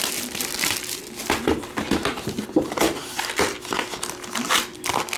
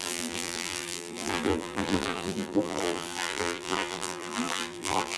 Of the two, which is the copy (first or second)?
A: second